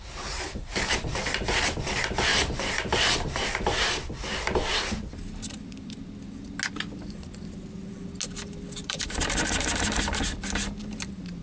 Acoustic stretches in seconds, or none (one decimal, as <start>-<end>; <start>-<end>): 0.0-2.3; 3.9-8.8; 10.3-11.4